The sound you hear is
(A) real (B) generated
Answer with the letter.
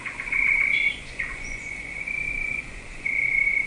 B